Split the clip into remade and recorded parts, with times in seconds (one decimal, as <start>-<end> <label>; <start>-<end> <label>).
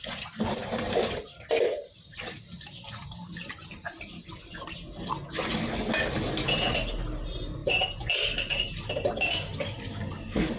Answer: 0.0-10.6 recorded